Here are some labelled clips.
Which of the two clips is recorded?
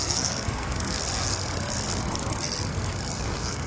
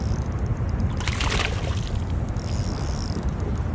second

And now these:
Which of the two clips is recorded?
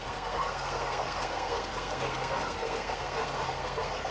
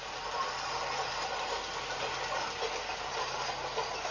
second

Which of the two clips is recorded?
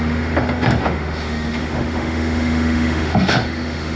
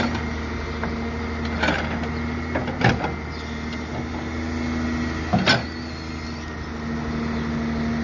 second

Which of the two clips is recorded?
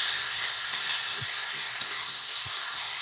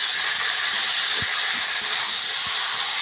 second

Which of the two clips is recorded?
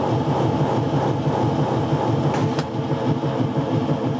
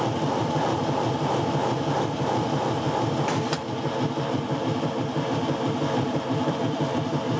first